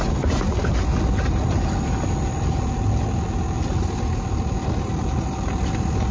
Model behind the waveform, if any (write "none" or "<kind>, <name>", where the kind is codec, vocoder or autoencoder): none